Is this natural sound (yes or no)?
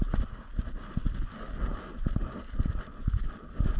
yes